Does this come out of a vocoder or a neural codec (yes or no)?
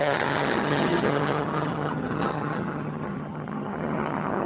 yes